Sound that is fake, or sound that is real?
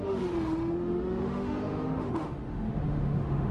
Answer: fake